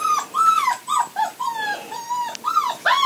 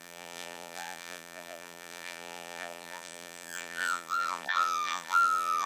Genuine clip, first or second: first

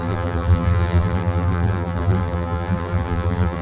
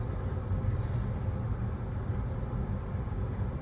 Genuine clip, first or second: second